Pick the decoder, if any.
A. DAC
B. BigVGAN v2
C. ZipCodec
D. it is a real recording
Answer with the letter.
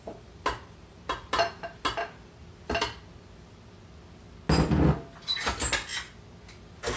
D